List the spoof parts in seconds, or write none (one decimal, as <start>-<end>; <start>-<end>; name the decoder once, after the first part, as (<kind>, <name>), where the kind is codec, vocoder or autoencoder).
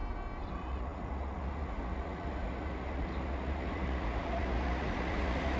0.5-5.6 (vocoder, Vocos)